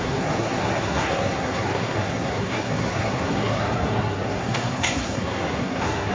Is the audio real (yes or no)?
no